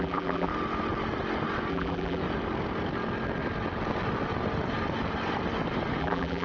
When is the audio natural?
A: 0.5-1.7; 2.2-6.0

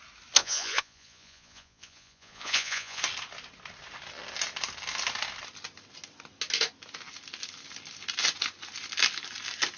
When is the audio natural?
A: 0.0-0.4; 3.0-9.8

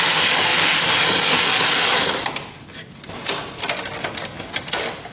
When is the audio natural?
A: 0.0-5.1

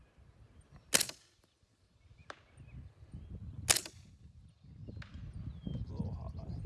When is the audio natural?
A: 0.0-6.7

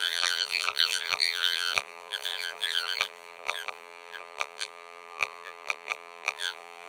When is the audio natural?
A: none

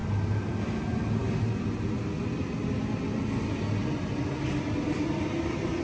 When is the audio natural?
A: 0.0-5.8